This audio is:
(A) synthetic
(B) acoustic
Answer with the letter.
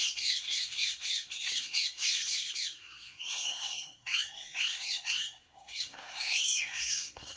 A